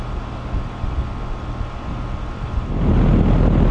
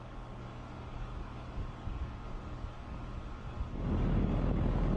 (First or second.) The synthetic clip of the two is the second